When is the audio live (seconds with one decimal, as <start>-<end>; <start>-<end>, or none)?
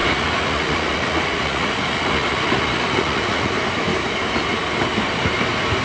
3.5-5.8